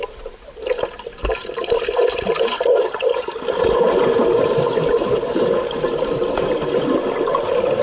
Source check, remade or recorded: recorded